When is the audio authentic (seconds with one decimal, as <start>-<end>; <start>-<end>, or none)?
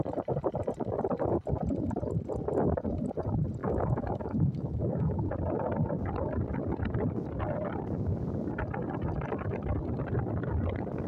0.0-3.6; 5.3-11.1